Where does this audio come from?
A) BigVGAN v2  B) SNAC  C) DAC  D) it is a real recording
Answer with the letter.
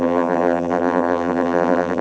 A